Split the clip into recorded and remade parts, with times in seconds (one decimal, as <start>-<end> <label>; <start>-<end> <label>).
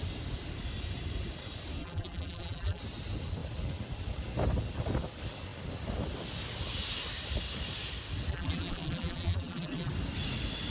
0.0-1.8 recorded; 1.8-2.8 remade; 2.8-8.3 recorded; 8.3-9.9 remade; 9.9-10.7 recorded